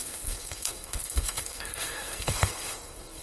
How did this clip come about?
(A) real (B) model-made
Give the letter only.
B